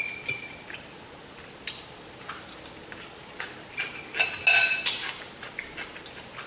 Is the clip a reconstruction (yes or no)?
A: no